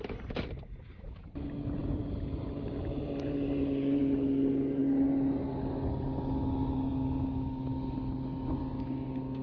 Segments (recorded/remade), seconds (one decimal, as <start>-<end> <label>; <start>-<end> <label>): 0.0-1.8 recorded; 1.8-4.0 remade; 4.0-9.4 recorded

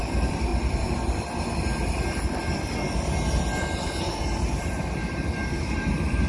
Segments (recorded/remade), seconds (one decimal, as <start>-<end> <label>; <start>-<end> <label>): 0.0-0.5 remade; 0.5-4.2 recorded; 4.2-6.3 remade

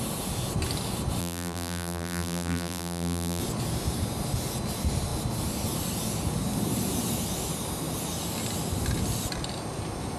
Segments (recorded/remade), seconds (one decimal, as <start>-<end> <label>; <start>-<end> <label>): 0.0-1.2 recorded; 1.2-3.4 remade; 3.4-10.2 recorded

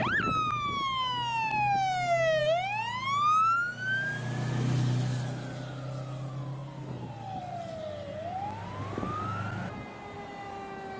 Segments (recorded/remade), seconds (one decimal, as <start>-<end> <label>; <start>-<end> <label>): 0.0-11.0 recorded